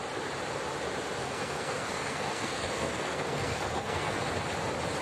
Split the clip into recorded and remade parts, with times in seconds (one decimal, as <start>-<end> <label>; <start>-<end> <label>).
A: 0.0-1.2 recorded; 1.2-4.2 remade; 4.2-5.0 recorded